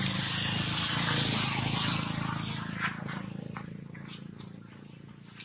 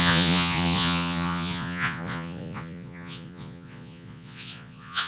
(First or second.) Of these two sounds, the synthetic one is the second